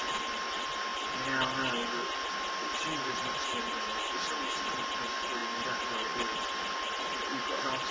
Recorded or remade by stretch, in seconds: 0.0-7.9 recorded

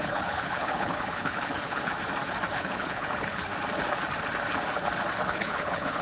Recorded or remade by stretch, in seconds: 0.0-1.9 remade; 1.9-2.5 recorded; 2.5-3.5 remade; 3.5-5.3 recorded; 5.3-6.0 remade

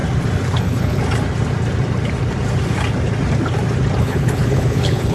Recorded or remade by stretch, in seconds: 0.0-0.6 recorded; 0.6-1.0 remade; 1.0-4.0 recorded; 4.0-5.1 remade

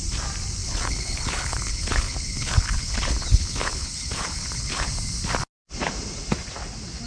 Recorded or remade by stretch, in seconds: 0.0-0.6 recorded; 0.6-4.9 remade; 4.9-7.1 recorded

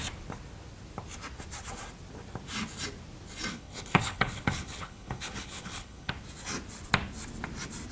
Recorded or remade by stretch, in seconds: 0.0-3.5 recorded; 3.5-6.1 remade; 6.1-7.9 recorded